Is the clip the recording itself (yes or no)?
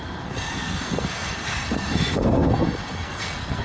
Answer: no